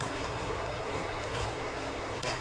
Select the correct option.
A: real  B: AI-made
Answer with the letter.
B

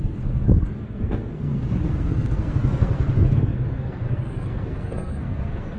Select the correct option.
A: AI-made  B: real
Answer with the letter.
A